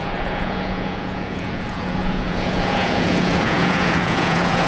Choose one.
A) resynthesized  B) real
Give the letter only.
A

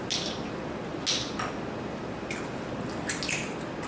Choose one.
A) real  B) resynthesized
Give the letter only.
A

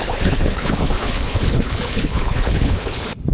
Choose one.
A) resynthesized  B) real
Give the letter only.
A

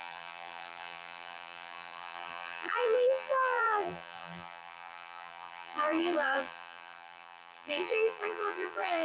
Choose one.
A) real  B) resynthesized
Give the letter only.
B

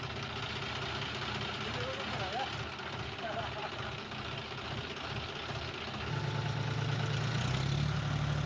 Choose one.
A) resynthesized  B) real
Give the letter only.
B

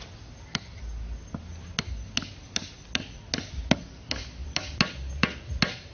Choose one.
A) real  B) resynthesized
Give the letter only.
A